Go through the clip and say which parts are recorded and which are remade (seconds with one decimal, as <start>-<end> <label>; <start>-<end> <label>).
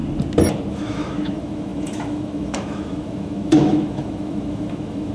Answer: 0.0-0.7 recorded; 0.7-5.1 remade